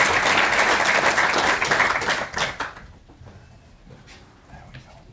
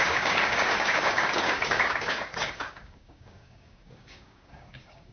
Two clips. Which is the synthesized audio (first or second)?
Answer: second